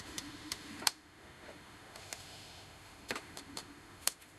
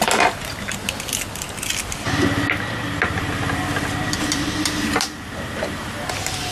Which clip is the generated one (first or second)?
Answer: first